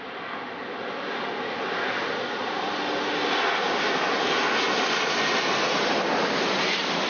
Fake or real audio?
real